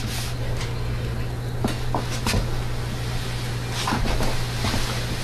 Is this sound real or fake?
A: real